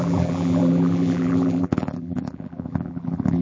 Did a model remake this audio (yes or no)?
yes